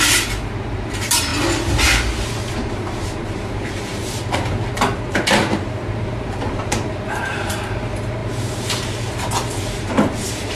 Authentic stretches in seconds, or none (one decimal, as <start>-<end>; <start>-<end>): 1.3-2.5